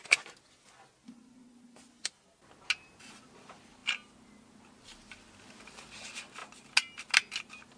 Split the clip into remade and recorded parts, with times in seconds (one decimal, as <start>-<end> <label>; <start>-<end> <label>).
0.0-7.8 recorded